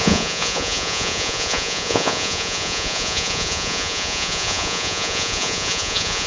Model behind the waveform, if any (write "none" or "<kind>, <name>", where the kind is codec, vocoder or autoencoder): vocoder, Vocos